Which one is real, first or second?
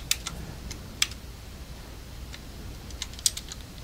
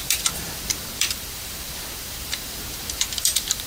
first